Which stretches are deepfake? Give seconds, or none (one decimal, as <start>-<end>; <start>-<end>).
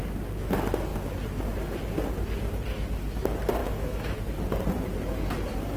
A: 3.6-4.2